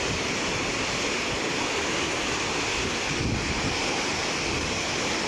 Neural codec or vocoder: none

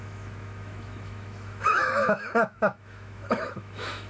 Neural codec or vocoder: autoencoder, DAC-VAE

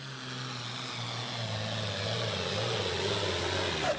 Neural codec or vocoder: none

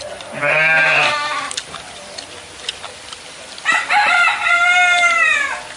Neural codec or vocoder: none